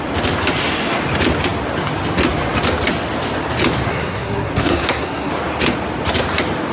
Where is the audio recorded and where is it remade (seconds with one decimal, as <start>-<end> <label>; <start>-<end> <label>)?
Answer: 0.0-3.9 recorded; 3.9-5.3 remade; 5.3-6.7 recorded